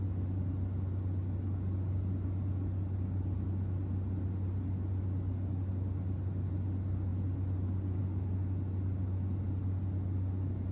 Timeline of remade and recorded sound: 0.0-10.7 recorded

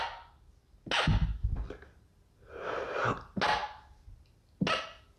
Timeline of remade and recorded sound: 0.0-5.2 recorded